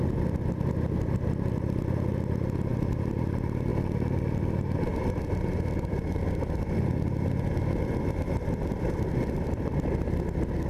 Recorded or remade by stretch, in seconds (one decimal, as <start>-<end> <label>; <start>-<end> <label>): 0.0-10.7 recorded